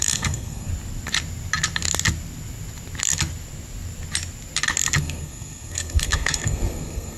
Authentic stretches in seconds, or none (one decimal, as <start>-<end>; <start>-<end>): 0.7-5.0